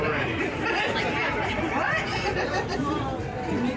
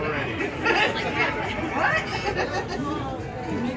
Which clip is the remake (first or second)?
first